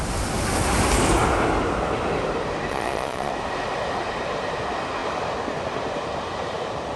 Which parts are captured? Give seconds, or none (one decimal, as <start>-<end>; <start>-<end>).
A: 0.0-2.7; 3.3-7.0

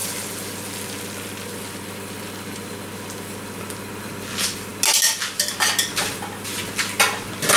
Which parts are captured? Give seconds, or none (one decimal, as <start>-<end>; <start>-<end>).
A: 0.0-7.6

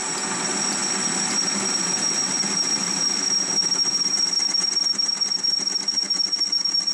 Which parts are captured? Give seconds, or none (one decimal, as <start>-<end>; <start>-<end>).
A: 0.0-6.9

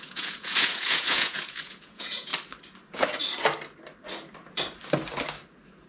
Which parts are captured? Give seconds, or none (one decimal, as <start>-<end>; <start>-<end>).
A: 2.3-5.9

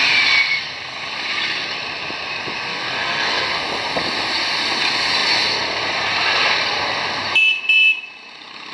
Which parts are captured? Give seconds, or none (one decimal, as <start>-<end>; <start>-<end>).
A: 0.0-2.7; 3.6-8.7

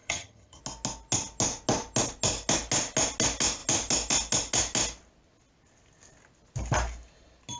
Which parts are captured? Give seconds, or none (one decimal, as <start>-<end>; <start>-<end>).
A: 0.6-7.6

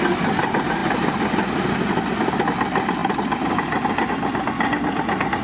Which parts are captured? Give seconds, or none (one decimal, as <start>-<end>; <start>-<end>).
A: 0.0-5.4